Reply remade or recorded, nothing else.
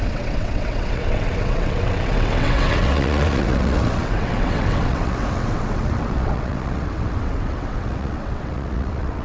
remade